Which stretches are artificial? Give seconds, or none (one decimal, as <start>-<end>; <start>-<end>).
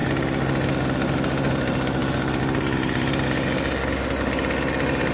none